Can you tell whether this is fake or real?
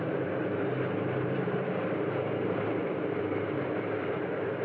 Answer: fake